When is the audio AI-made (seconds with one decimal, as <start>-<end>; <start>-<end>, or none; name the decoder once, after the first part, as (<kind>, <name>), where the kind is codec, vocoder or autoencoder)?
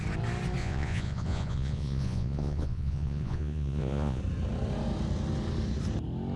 0.6-4.2 (vocoder, Vocos)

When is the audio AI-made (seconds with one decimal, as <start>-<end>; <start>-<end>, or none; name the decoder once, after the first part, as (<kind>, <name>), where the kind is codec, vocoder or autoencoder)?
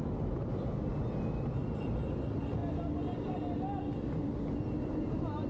none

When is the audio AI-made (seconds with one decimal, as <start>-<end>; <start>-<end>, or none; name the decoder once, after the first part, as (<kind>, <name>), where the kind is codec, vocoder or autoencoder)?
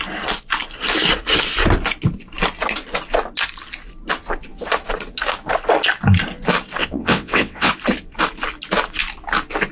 6.8-7.7 (vocoder, WaveNeXt)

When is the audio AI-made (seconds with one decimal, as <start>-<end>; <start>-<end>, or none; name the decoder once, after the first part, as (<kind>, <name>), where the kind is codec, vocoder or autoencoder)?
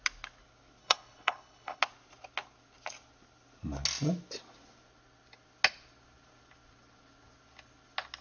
0.8-1.8 (codec, HILCodec)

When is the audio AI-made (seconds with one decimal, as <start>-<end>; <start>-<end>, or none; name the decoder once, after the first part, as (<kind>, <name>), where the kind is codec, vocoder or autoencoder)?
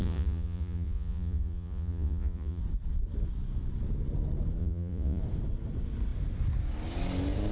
0.0-2.6 (vocoder, Vocos); 4.6-5.2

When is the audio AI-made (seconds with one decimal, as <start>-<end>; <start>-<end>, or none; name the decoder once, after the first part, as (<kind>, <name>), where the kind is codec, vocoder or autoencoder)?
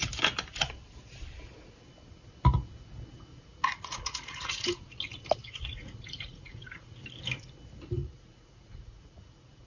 3.3-5.0 (vocoder, Vocos); 5.4-7.0; 8.0-9.7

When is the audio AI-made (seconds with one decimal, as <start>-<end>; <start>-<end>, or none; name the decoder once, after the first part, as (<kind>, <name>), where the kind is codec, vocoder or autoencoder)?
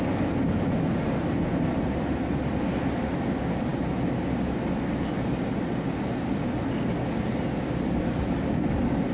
none